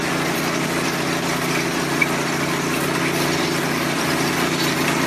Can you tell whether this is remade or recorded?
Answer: recorded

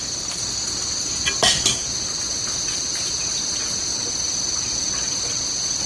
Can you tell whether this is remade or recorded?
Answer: recorded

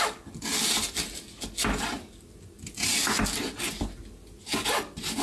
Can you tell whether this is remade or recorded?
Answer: recorded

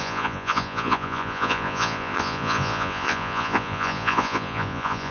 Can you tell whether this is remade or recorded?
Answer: remade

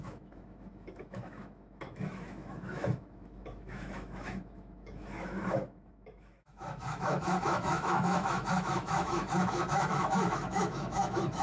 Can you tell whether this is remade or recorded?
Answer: remade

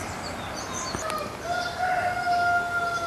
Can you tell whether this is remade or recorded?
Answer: recorded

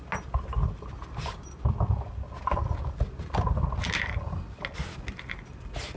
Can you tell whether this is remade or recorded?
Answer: recorded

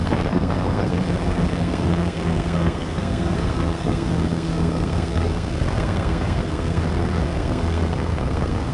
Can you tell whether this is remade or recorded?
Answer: remade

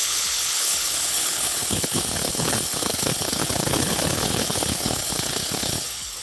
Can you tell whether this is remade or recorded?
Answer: remade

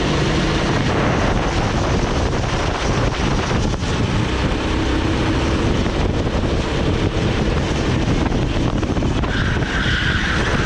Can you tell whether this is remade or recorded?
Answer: recorded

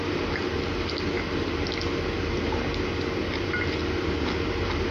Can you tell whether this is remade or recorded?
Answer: recorded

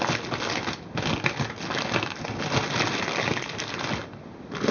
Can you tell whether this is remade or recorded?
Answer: recorded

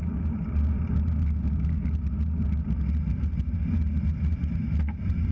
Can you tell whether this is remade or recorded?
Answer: recorded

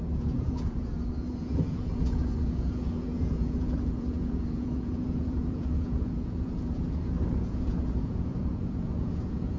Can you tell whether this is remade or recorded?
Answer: remade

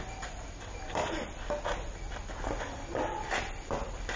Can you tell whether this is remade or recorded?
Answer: recorded